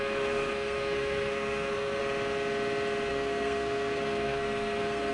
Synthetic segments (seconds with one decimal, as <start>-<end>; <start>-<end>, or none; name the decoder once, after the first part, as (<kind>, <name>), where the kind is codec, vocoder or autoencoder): 0.0-2.0 (codec, SNAC); 3.1-5.1